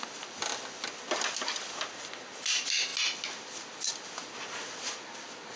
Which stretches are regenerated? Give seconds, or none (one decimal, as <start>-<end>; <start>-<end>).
none